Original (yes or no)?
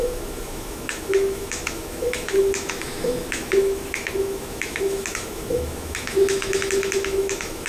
no